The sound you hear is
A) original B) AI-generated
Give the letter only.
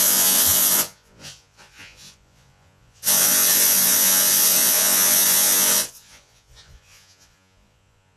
B